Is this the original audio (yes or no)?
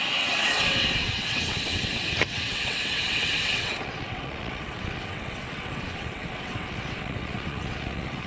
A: no